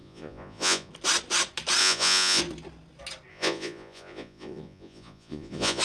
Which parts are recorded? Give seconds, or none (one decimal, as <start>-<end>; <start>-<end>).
0.9-1.8; 2.4-3.3